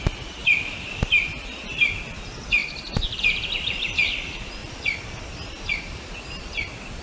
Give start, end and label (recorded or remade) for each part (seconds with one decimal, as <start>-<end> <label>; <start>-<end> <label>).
0.0-0.4 recorded; 0.4-1.0 remade; 1.0-2.6 recorded; 2.6-3.2 remade; 3.2-4.6 recorded; 4.6-5.2 remade; 5.2-7.0 recorded